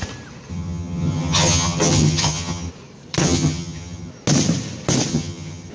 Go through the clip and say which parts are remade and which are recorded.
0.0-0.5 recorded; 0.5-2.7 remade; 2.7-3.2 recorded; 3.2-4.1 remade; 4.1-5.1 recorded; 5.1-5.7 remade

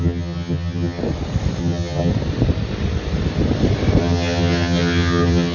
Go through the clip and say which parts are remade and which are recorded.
0.0-1.0 remade; 1.0-1.6 recorded; 1.6-2.1 remade; 2.1-4.0 recorded; 4.0-5.5 remade

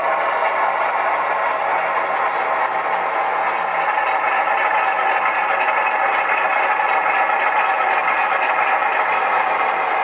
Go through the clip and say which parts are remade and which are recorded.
0.0-10.0 recorded

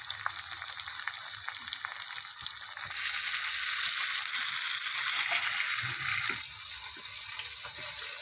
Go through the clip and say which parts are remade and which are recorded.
0.0-8.2 recorded